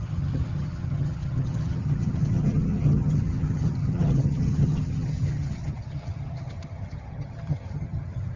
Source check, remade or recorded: remade